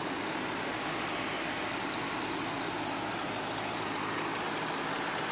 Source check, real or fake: real